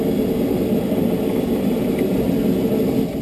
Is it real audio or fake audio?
real